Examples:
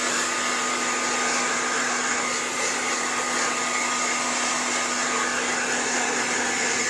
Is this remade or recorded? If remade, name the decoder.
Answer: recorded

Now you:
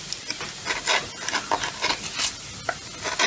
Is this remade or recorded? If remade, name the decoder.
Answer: recorded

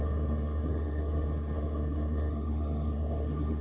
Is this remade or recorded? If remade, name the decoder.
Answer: remade, codec, SNAC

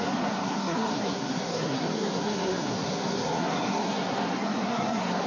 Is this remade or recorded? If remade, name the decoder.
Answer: remade, codec, SNAC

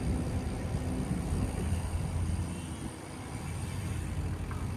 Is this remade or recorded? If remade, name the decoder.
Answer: recorded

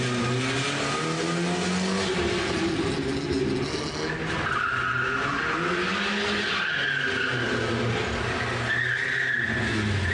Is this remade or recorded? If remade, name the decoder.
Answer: recorded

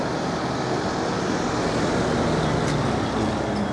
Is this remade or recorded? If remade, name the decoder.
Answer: recorded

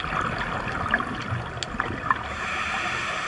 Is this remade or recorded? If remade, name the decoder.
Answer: recorded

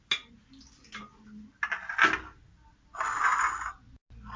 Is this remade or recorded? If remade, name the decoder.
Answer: recorded